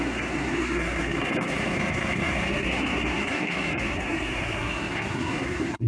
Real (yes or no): no